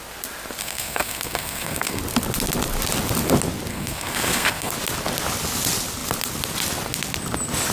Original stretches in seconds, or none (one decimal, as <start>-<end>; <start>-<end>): 0.0-0.6; 2.0-3.7; 4.7-7.7